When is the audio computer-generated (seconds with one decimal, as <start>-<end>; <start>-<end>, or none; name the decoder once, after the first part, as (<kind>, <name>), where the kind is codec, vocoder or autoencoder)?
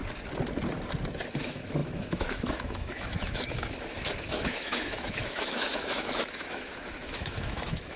1.3-8.0 (autoencoder, DAC-VAE)